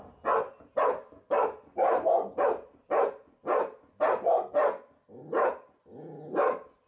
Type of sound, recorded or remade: recorded